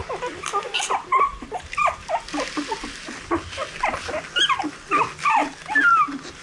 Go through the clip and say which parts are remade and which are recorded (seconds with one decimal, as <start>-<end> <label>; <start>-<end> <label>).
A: 0.0-6.4 recorded